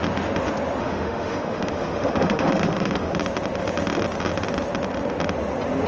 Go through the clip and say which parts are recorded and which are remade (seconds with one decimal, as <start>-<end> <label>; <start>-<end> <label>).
0.0-0.8 recorded; 0.8-3.1 remade; 3.1-5.9 recorded